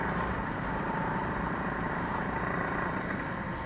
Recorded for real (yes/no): no